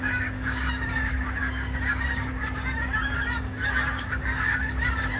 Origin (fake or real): fake